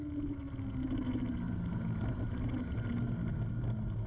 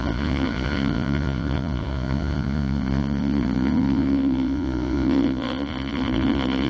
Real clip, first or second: first